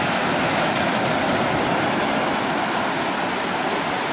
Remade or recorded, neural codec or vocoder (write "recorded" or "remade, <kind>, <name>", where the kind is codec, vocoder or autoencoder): recorded